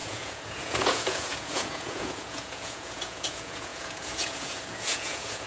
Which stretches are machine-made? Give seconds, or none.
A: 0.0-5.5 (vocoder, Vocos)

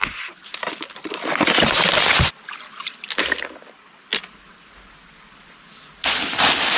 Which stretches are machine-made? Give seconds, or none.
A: none